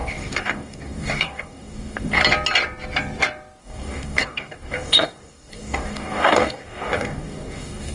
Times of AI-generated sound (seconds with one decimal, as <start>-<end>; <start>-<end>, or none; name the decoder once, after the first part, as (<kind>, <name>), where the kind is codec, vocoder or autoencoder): 0.0-2.2 (codec, DAC); 3.6-7.9